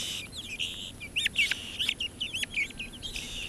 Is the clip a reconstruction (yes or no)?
no